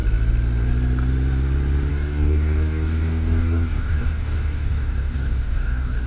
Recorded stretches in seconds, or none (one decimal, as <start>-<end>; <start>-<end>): 0.0-1.9